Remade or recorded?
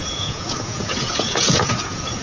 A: remade